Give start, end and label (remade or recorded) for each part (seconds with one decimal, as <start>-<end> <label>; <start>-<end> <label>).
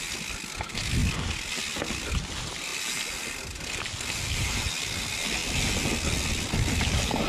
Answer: 0.0-7.3 recorded